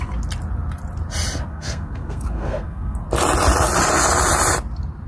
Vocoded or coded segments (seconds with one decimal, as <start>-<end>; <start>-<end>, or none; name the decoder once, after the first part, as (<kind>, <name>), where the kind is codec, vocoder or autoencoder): 1.5-3.0 (codec, SNAC)